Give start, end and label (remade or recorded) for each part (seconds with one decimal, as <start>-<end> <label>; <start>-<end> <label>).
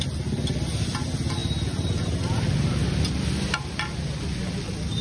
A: 0.0-5.0 recorded